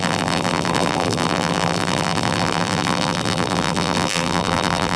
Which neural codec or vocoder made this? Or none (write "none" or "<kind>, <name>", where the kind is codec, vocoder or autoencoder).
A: vocoder, BigVGAN v2